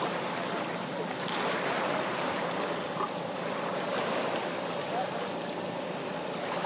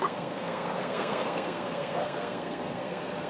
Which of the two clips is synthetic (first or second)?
second